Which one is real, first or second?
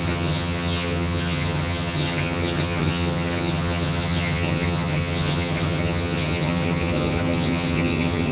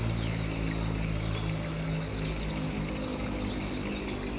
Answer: second